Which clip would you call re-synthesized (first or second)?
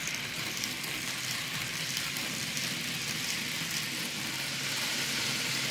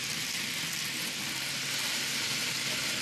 first